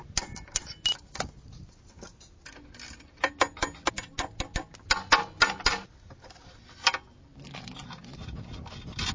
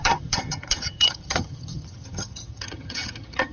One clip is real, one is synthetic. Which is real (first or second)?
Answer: first